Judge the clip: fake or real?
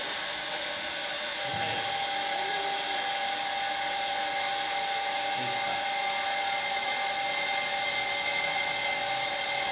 real